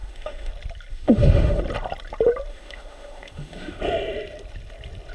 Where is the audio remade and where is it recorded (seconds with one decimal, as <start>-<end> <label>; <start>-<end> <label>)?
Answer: 0.0-0.5 remade; 0.5-0.9 recorded; 0.9-1.6 remade; 1.6-2.5 recorded; 2.5-3.8 remade; 3.8-5.1 recorded

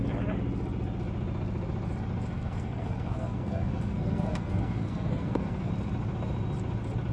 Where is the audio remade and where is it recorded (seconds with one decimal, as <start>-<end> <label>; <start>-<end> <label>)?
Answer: 0.0-2.3 recorded; 2.3-5.7 remade; 5.7-7.1 recorded

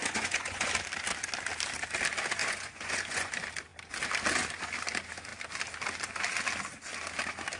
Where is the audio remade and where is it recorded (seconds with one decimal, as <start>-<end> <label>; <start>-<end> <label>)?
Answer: 0.0-0.7 remade; 0.7-2.4 recorded; 2.4-3.3 remade; 3.3-7.6 recorded

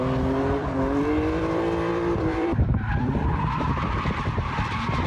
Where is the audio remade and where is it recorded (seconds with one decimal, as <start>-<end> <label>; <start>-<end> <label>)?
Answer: 0.0-0.6 recorded; 0.6-3.7 remade; 3.7-5.1 recorded

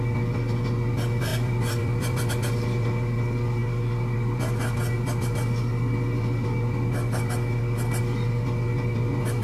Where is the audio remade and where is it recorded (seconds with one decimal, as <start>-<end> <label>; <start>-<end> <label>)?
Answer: 0.0-1.3 recorded; 1.3-2.3 remade; 2.3-9.4 recorded

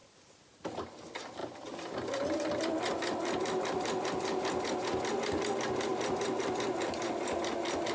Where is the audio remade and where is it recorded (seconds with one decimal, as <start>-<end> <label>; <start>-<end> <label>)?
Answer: 0.0-7.9 recorded

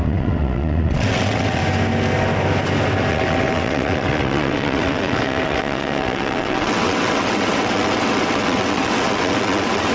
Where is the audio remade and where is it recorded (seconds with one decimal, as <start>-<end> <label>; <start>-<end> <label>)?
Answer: 0.0-1.6 remade; 1.6-3.1 recorded; 3.1-9.9 remade